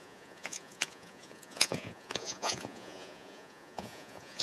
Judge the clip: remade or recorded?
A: remade